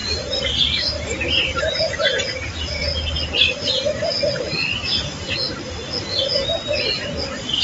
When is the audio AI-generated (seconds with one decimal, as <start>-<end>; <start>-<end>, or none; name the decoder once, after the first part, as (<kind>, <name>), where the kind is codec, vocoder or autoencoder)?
0.0-1.6 (vocoder, BigVGAN v2)